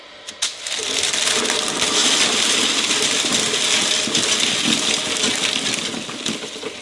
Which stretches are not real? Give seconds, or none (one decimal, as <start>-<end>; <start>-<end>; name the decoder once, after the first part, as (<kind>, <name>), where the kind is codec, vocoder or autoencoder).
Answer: none